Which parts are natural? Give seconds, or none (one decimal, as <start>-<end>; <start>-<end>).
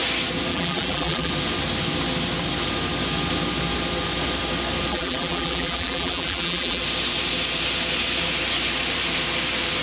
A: 0.0-0.5; 1.3-4.9; 6.8-9.8